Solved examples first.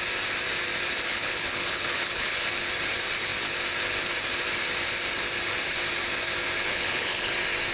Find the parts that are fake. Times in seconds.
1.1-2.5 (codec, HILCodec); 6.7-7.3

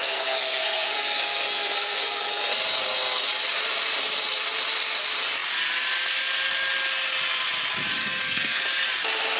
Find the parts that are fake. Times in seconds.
0.0-2.4 (codec, SNAC); 8.0-8.6

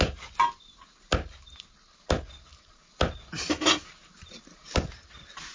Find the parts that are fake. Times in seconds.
none

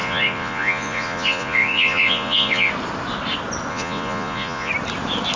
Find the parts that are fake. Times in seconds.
0.0-2.7 (vocoder, Vocos); 3.7-4.7

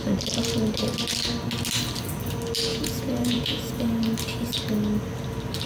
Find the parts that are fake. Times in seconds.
2.7-3.7 (vocoder, Vocos)